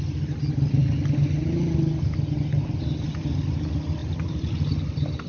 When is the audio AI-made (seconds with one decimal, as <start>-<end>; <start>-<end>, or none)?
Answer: 4.0-4.6